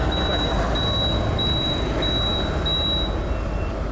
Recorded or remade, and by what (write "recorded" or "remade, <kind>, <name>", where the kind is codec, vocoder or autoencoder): recorded